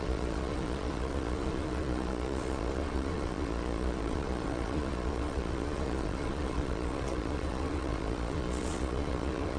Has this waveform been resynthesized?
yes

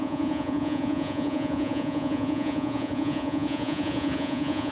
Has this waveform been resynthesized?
yes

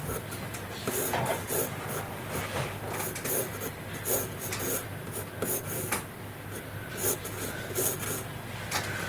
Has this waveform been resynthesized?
no